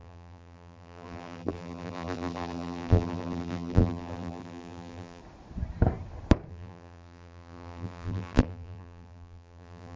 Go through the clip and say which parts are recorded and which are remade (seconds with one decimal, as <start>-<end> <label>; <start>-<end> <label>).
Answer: 0.0-5.2 remade; 5.2-6.5 recorded; 6.5-10.0 remade